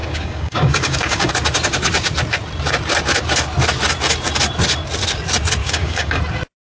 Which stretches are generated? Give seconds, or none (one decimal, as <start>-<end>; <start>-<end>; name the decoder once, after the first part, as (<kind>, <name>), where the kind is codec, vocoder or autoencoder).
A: 0.0-1.3 (codec, DAC); 5.6-6.2